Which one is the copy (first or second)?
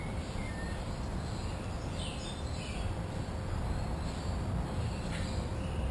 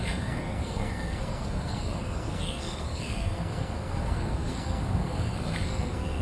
second